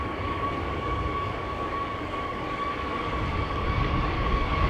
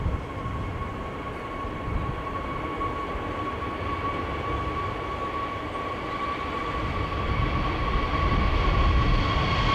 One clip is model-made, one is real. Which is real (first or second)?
second